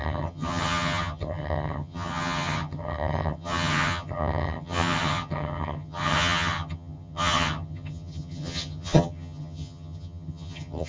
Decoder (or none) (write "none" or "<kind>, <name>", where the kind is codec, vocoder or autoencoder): vocoder, HiFi-GAN